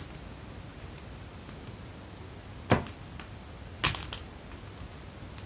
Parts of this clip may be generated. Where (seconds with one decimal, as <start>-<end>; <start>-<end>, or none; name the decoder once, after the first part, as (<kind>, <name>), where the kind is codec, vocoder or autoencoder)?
none